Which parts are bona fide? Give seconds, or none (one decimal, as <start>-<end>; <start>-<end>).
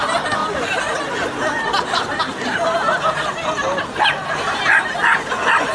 0.0-5.7